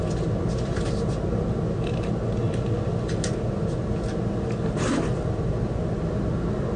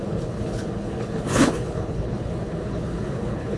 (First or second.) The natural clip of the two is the first